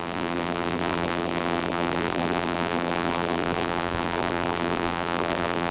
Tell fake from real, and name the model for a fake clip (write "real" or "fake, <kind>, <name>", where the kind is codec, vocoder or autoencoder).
fake, vocoder, BigVGAN v2